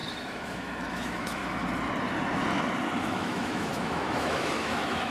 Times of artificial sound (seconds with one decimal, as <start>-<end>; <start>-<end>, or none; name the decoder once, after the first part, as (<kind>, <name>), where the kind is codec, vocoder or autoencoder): 0.0-1.4 (autoencoder, DAC-VAE); 3.0-5.1